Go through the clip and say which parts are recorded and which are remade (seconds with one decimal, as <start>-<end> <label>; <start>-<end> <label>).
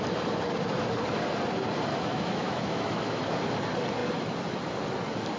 0.0-1.9 recorded; 1.9-3.2 remade; 3.2-5.4 recorded